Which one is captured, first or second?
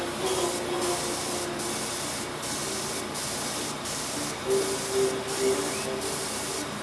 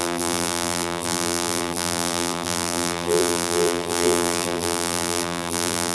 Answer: first